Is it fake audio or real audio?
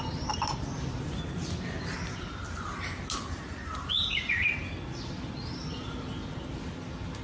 real